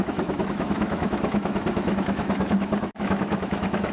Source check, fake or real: fake